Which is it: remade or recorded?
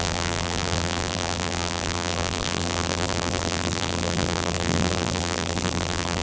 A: remade